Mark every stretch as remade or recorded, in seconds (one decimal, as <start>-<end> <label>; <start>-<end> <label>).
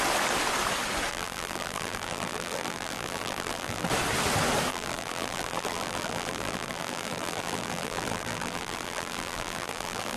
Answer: 0.0-1.1 recorded; 1.1-3.9 remade; 3.9-4.7 recorded; 4.7-10.2 remade